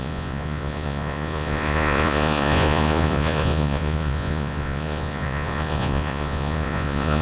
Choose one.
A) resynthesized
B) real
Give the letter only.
A